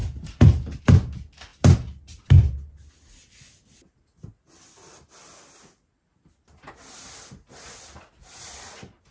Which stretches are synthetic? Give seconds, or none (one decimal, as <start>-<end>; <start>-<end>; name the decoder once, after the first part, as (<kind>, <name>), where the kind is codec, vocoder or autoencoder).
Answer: 0.0-0.8 (vocoder, BigVGAN v2)